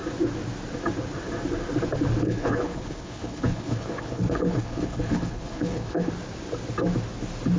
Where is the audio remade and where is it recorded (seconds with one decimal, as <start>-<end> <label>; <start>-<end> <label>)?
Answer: 0.0-2.2 recorded; 2.2-6.1 remade; 6.1-7.6 recorded